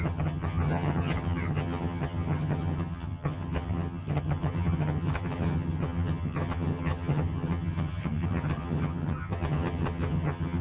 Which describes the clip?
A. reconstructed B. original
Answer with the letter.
A